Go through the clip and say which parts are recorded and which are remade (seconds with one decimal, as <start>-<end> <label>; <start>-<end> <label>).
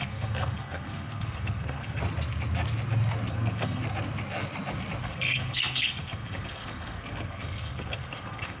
0.0-2.0 remade; 2.0-3.3 recorded; 3.3-3.8 remade; 3.8-5.0 recorded; 5.0-8.6 remade